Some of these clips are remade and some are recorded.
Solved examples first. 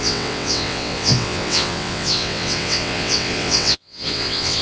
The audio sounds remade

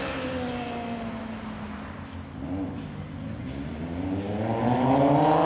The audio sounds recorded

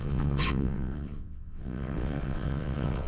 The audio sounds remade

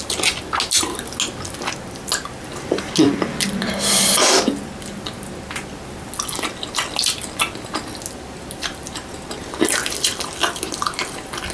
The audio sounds recorded